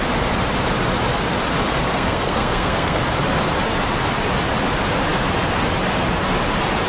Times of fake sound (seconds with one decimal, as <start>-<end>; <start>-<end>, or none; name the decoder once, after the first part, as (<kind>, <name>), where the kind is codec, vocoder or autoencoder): 1.9-3.0 (codec, SNAC)